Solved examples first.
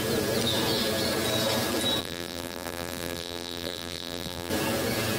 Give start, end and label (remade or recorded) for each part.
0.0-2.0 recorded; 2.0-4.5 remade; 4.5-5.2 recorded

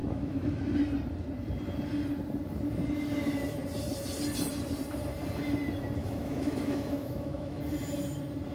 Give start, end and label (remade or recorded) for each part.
0.0-0.6 remade; 0.6-6.0 recorded; 6.0-7.6 remade; 7.6-8.5 recorded

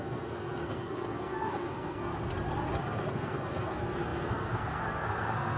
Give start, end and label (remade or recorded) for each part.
0.0-2.1 remade; 2.1-3.1 recorded; 3.1-5.6 remade

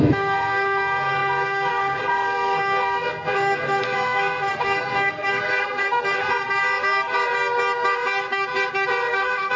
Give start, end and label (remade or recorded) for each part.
0.0-6.2 remade; 6.2-9.1 recorded; 9.1-9.6 remade

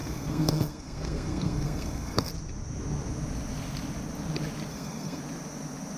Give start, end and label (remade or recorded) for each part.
0.0-2.3 remade; 2.3-4.7 recorded; 4.7-5.2 remade; 5.2-6.0 recorded

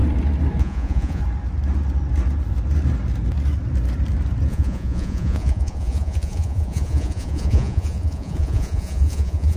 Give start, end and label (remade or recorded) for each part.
0.0-0.6 recorded; 0.6-1.2 remade; 1.2-4.5 recorded; 4.5-9.6 remade

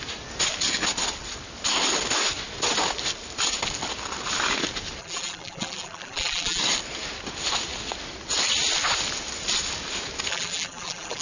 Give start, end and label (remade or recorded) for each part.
0.0-5.0 recorded; 5.0-6.6 remade; 6.6-10.3 recorded; 10.3-11.2 remade